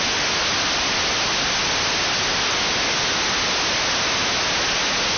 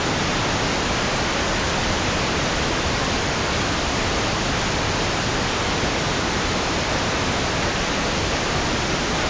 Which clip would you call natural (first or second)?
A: first